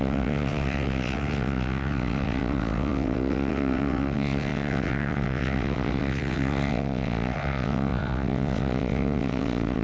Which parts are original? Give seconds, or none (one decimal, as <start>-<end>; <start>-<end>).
none